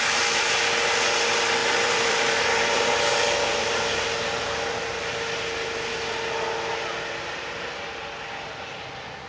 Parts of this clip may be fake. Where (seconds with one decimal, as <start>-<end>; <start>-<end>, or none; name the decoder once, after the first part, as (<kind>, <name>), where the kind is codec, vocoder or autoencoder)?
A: 1.6-2.9 (vocoder, BigVGAN v2)